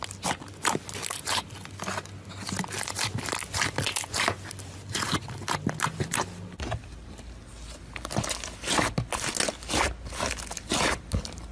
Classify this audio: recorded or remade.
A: recorded